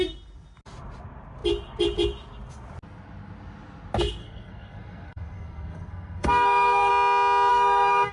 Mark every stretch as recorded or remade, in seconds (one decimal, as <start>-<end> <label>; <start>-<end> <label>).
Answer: 0.0-4.2 recorded; 4.2-6.9 remade; 6.9-7.5 recorded; 7.5-8.1 remade